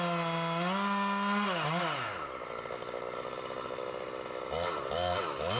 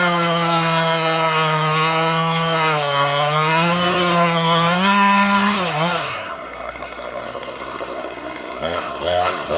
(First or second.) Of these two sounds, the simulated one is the second